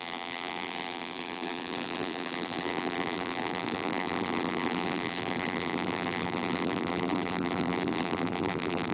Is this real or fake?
fake